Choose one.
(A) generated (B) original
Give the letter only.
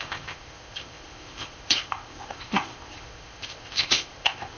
A